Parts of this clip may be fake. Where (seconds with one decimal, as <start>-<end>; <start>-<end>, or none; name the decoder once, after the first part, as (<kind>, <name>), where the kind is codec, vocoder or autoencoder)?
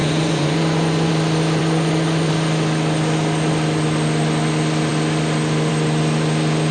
0.0-1.1 (vocoder, Vocos); 1.6-2.3